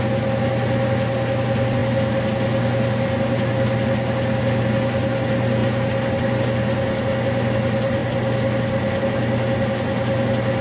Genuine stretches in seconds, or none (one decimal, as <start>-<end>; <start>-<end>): 0.0-10.6